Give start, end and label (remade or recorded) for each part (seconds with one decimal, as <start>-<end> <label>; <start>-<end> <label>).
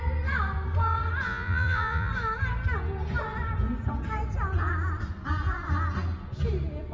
0.0-1.3 recorded; 1.3-2.1 remade; 2.1-6.9 recorded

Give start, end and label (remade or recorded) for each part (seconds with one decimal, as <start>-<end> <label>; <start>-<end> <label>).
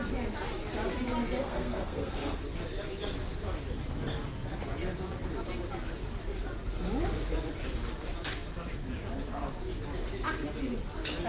0.0-1.4 recorded; 1.4-2.4 remade; 2.4-11.3 recorded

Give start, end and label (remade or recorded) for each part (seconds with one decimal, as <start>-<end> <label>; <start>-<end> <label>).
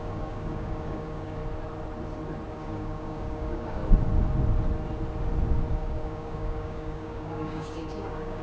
0.0-1.4 remade; 1.4-2.5 recorded; 2.5-3.8 remade; 3.8-5.7 recorded; 5.7-8.4 remade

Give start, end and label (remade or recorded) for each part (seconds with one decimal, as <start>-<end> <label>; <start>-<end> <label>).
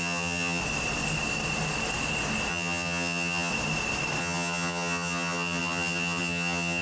0.0-0.6 remade; 0.6-2.5 recorded; 2.5-3.5 remade; 3.5-4.2 recorded; 4.2-6.8 remade